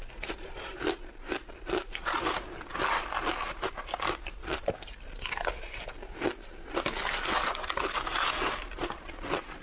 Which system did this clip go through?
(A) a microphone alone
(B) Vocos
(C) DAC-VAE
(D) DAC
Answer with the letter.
A